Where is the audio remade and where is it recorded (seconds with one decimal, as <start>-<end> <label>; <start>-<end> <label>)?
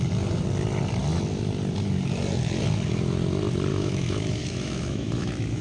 0.0-3.7 recorded; 3.7-5.6 remade